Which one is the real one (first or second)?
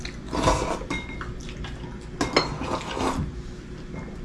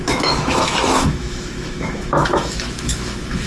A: first